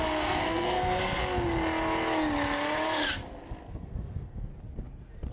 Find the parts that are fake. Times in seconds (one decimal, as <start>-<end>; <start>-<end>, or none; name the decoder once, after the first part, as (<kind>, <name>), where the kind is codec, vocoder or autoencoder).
0.0-1.2 (codec, SNAC); 3.7-4.5